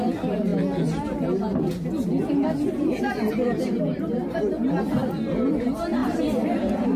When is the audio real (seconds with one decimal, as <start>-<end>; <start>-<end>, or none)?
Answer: 0.0-6.0; 6.6-7.0